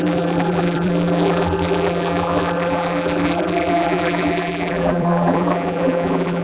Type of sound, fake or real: fake